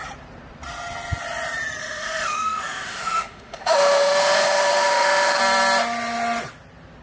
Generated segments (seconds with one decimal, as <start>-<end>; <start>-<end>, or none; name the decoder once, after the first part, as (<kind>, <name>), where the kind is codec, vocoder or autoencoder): 1.8-5.4 (autoencoder, DAC-VAE)